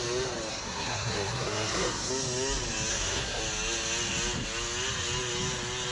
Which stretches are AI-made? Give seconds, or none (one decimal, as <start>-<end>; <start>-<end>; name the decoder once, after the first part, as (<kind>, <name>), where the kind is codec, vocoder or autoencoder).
0.5-2.1 (codec, SNAC); 2.9-3.4

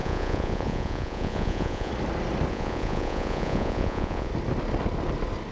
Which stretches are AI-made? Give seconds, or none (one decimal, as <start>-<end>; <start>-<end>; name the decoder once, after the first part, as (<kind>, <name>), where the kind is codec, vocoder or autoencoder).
0.0-1.9 (vocoder, Vocos); 2.5-4.3

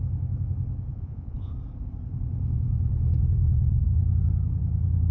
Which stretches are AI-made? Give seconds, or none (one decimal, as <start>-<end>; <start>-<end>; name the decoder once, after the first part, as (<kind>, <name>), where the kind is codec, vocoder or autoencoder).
0.9-1.5 (vocoder, Vocos)

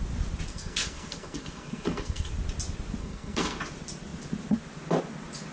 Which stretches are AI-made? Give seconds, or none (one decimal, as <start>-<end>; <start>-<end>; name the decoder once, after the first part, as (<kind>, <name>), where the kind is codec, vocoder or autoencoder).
0.5-2.3 (codec, SNAC); 3.0-3.6

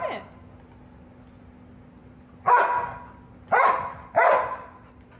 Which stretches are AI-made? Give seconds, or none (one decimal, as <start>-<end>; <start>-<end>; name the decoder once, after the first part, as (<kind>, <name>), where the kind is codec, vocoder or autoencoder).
none

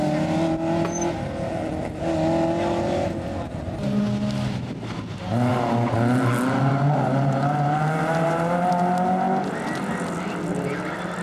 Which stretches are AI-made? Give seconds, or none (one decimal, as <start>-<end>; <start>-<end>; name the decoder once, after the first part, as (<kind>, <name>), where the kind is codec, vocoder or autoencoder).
none